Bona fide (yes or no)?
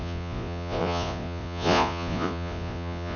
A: no